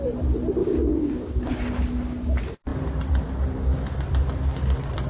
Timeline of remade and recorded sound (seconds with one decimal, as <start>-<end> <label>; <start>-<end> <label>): 0.0-0.6 recorded; 0.6-1.5 remade; 1.5-5.1 recorded